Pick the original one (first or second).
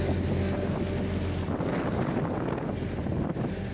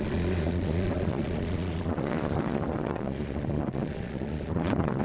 first